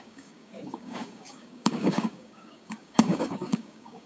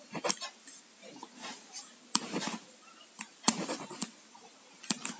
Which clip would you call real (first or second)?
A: second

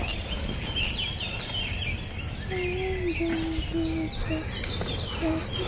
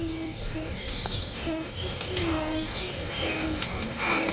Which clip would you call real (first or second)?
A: first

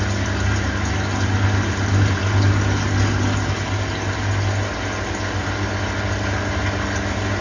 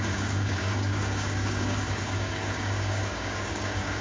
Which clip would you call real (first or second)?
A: first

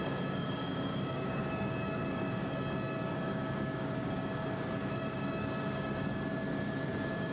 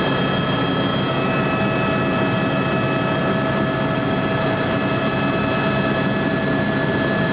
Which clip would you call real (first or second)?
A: second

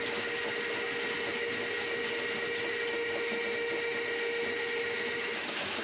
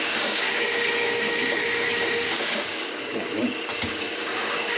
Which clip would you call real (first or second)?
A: first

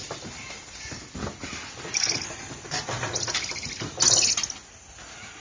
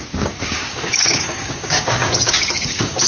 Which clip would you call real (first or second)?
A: first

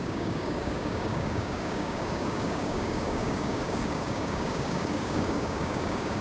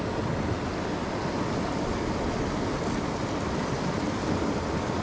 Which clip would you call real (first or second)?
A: second